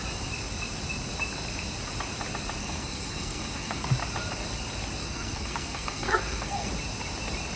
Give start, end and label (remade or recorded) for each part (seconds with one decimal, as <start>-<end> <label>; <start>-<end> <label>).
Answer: 0.0-2.6 recorded; 2.6-3.9 remade; 3.9-5.0 recorded; 5.0-6.7 remade; 6.7-7.6 recorded